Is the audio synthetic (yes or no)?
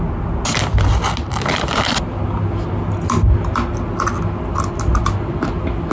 no